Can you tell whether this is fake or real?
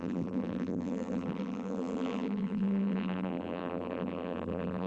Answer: fake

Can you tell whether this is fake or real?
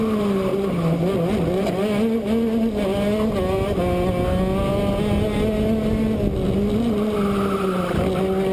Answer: real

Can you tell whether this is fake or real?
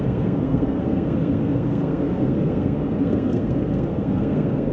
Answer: fake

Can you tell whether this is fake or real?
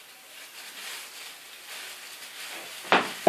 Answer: real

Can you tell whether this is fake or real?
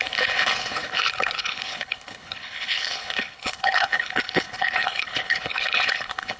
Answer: fake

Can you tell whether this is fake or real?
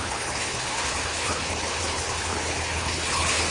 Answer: fake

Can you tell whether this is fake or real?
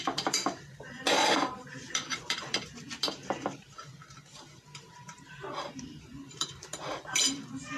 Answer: fake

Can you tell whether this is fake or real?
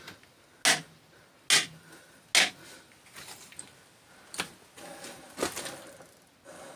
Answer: real